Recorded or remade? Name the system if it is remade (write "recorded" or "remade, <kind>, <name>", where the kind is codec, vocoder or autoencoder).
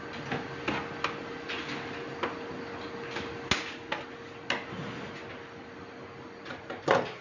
recorded